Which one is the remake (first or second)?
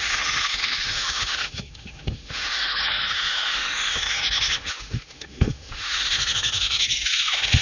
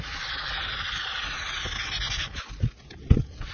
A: first